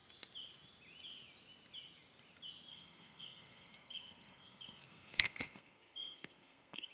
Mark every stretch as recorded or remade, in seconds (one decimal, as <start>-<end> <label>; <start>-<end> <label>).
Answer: 0.0-2.7 recorded; 2.7-6.9 remade